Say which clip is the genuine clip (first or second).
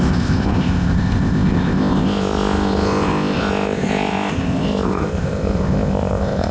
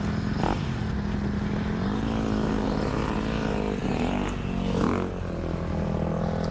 second